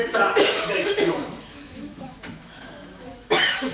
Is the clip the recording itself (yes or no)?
no